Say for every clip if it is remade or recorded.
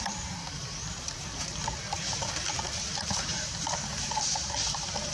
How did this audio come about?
remade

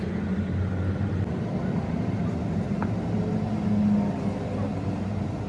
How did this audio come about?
recorded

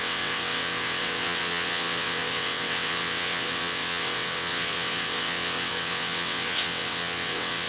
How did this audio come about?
remade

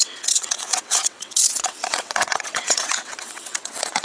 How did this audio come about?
remade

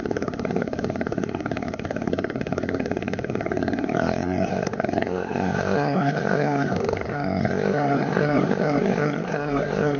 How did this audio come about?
remade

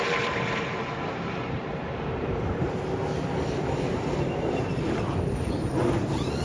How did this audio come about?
remade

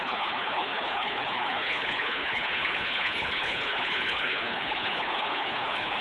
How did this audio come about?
remade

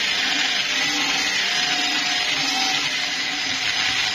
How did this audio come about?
recorded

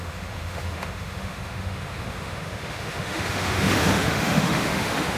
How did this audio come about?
remade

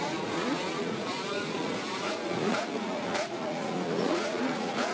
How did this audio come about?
remade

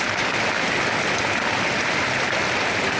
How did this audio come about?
recorded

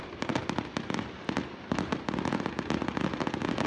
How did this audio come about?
recorded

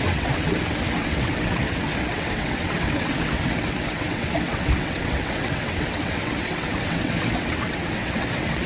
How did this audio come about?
remade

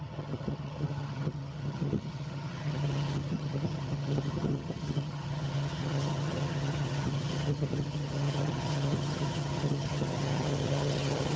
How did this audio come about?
remade